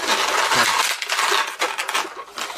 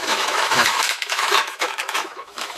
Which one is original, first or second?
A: first